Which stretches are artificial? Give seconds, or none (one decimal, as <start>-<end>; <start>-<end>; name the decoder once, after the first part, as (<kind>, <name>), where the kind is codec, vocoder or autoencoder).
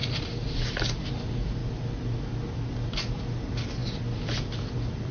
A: 0.0-1.6 (vocoder, BigVGAN v2); 2.7-5.1